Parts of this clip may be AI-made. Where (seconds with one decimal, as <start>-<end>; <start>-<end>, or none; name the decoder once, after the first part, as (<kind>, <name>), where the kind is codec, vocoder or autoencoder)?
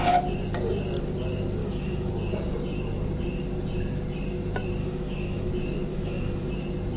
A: 1.6-2.1 (autoencoder, DAC-VAE); 4.8-5.5; 5.9-6.5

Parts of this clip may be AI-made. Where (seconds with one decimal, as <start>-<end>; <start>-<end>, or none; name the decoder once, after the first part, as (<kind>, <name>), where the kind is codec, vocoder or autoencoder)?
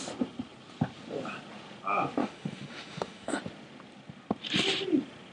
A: 2.2-3.4 (autoencoder, DAC-VAE)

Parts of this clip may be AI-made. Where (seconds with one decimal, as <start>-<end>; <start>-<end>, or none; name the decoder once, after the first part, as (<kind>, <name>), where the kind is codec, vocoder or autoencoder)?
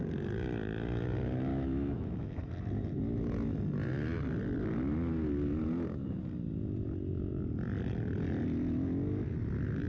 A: 1.5-2.5 (autoencoder, DAC-VAE)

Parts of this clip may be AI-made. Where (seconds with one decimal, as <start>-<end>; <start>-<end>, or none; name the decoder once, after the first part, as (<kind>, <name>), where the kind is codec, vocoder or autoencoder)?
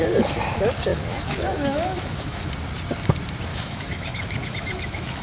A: 0.9-2.5 (autoencoder, DAC-VAE); 3.5-5.2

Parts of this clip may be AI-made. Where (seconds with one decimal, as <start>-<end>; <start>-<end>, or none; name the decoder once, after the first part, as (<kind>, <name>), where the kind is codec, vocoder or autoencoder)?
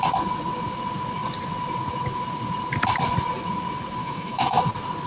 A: 4.0-4.6 (autoencoder, DAC-VAE)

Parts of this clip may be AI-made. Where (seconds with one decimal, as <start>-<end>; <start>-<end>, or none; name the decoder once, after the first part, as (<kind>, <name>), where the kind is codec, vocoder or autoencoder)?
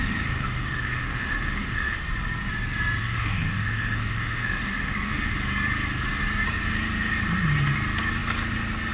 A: 0.0-2.0 (autoencoder, DAC-VAE); 3.0-5.3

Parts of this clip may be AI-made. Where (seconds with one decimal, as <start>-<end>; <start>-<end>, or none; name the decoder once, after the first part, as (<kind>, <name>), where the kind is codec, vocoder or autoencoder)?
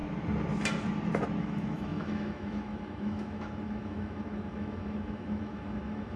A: 1.4-6.2 (autoencoder, DAC-VAE)